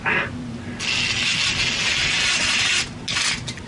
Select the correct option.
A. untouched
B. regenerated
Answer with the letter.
A